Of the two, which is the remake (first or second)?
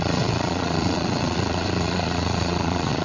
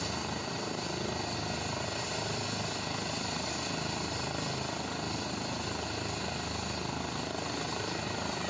first